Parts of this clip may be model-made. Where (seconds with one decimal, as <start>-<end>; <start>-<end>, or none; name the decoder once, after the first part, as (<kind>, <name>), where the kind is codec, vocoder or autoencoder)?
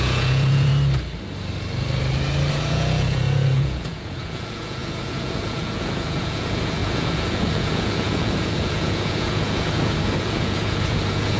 0.0-0.7 (vocoder, Vocos); 2.5-11.4